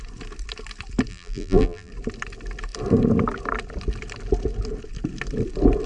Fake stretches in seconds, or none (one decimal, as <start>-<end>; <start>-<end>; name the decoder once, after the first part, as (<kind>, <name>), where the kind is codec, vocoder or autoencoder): 1.1-1.9 (vocoder, BigVGAN v2)